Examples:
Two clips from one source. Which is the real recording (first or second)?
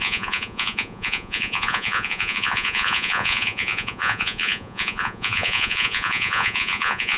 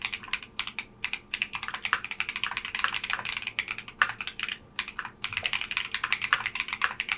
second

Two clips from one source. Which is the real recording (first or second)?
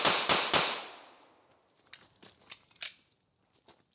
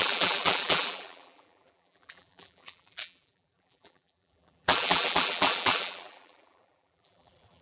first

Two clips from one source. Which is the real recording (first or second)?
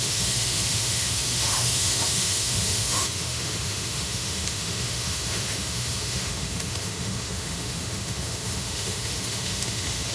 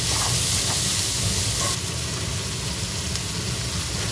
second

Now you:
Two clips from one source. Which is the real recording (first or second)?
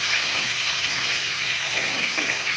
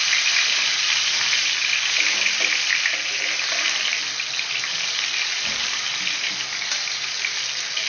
second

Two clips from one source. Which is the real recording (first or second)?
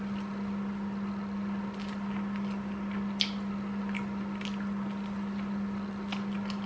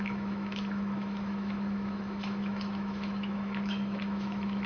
first